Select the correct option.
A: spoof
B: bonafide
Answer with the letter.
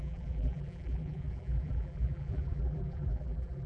A